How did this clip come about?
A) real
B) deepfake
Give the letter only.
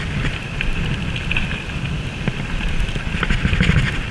A